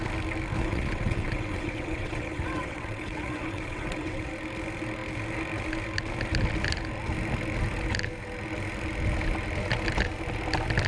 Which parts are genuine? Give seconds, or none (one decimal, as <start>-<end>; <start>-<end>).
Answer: 0.0-0.6; 4.3-10.9